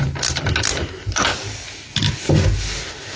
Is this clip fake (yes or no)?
no